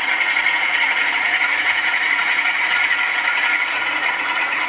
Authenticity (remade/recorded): remade